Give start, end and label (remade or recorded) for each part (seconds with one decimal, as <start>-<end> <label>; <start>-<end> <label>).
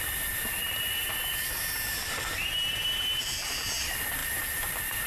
0.0-2.0 recorded; 2.0-3.7 remade; 3.7-4.2 recorded; 4.2-5.1 remade